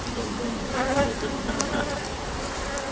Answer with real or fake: fake